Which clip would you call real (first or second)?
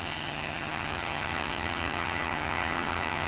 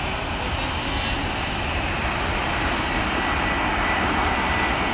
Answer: second